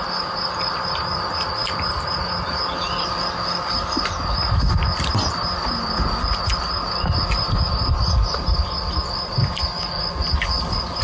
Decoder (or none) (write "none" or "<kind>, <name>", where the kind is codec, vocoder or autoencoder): none